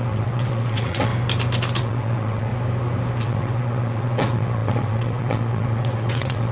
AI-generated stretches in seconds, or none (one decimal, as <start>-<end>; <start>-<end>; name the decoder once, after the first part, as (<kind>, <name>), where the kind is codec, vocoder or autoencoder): 0.0-1.1 (vocoder, WaveNeXt); 1.8-2.5; 3.2-6.5